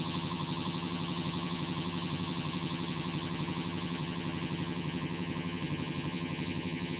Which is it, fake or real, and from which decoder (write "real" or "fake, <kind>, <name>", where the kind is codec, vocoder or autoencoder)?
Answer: fake, vocoder, HiFi-GAN